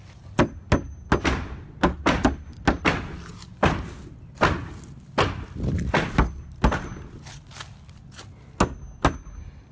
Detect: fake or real real